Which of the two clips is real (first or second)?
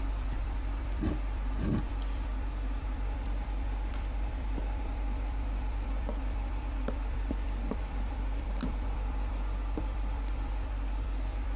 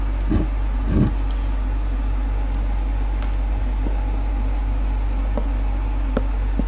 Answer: second